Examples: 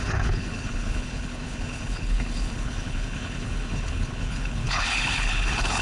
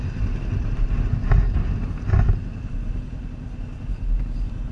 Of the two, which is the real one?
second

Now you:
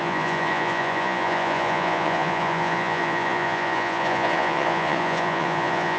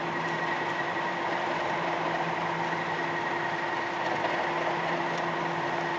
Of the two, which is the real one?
second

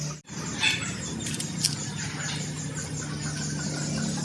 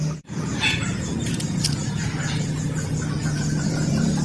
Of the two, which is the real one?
first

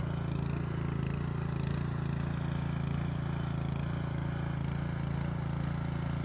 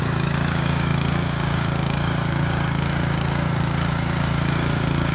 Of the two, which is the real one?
first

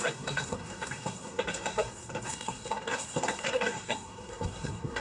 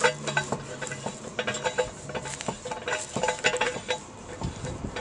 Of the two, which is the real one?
second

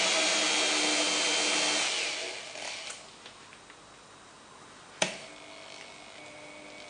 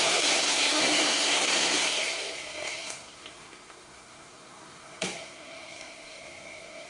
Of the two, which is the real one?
first